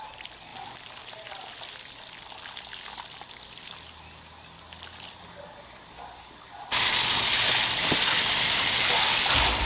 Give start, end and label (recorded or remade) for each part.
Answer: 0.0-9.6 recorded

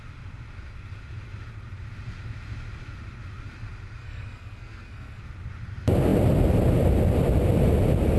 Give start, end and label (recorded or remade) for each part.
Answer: 0.0-4.0 recorded; 4.0-5.2 remade; 5.2-8.2 recorded

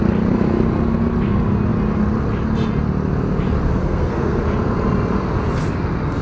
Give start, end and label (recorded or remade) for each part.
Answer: 0.0-3.8 recorded; 3.8-4.4 remade; 4.4-6.2 recorded

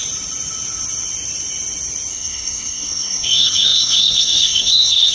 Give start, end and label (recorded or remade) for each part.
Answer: 0.0-2.1 recorded; 2.1-5.1 remade